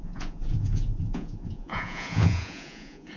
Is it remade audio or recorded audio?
remade